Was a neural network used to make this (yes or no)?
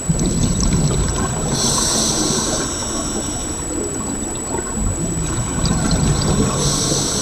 no